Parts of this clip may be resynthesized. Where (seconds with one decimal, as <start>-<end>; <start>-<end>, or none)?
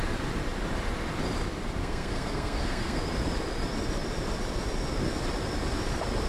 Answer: 1.8-3.0